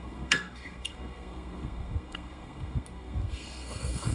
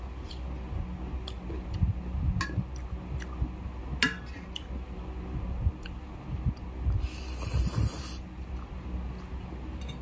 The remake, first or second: first